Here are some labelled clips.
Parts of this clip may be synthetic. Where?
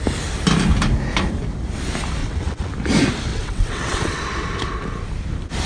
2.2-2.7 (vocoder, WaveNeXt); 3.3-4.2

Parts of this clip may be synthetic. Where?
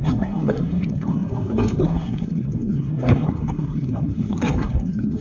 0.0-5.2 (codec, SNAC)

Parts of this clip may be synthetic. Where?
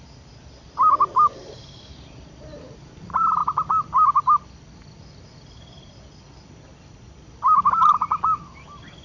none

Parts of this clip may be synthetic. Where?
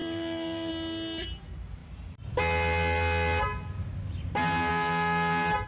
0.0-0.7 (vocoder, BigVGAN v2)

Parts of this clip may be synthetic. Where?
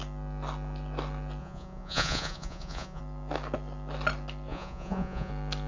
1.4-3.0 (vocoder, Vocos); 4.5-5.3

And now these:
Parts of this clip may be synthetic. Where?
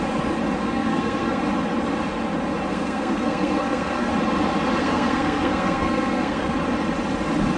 0.6-1.4 (codec, SNAC); 2.7-4.1; 4.8-6.5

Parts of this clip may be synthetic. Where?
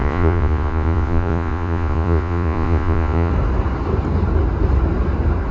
0.0-3.3 (vocoder, Vocos)